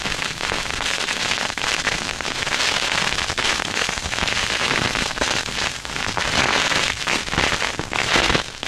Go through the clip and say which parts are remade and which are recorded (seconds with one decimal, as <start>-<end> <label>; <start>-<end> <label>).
0.0-7.2 remade; 7.2-7.7 recorded; 7.7-8.7 remade